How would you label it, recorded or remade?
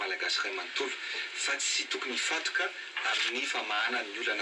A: recorded